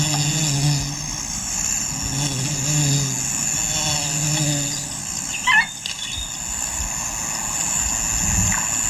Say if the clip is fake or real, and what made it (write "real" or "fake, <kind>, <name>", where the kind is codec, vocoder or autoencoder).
real